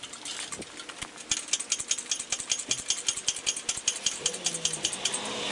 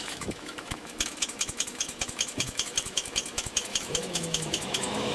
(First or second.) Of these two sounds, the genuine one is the first